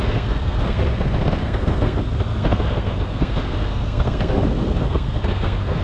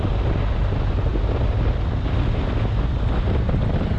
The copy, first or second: first